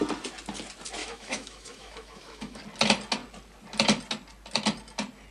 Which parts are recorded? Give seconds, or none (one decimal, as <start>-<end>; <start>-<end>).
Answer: 0.0-1.0; 2.6-5.3